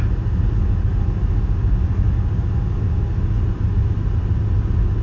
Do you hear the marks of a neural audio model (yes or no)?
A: no